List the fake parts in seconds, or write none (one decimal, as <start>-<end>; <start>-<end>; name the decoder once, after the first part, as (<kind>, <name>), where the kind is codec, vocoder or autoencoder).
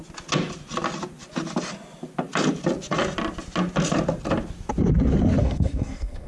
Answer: 5.4-6.3 (codec, SNAC)